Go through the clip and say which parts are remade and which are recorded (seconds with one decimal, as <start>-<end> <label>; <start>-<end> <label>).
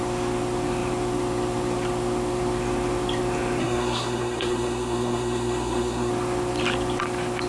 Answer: 0.0-3.6 recorded; 3.6-6.1 remade; 6.1-7.5 recorded